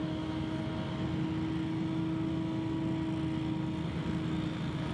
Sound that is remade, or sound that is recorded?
recorded